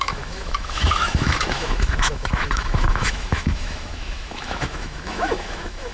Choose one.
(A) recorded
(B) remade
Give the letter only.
B